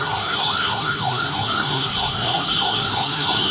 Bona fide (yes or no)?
no